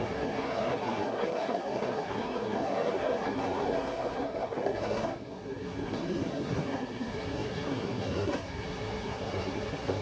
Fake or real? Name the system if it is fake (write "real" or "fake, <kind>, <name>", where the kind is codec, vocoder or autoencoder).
fake, codec, SNAC